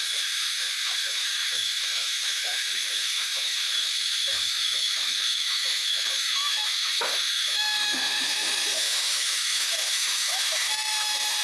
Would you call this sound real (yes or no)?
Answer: no